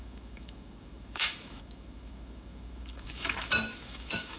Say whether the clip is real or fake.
fake